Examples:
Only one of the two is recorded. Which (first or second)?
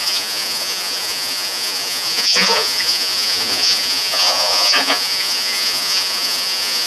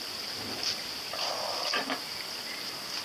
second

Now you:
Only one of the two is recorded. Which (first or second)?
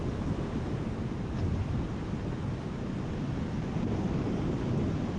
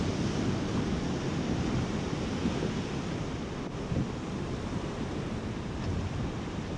first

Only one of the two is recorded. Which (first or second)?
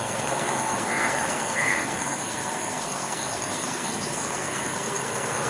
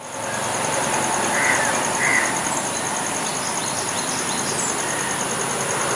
second